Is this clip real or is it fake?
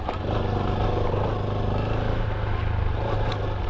real